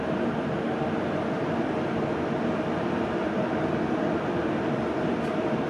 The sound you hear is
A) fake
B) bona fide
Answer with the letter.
B